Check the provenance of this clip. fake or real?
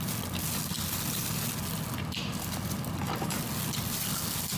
real